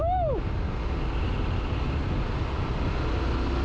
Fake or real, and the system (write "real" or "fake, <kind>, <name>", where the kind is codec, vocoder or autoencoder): real